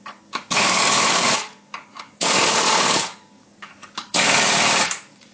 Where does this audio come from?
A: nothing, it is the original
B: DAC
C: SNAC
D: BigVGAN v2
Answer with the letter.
B